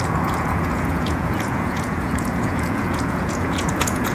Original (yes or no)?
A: no